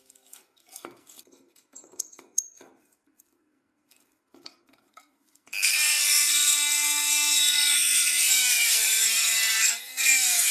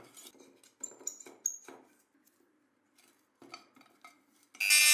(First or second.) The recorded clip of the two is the second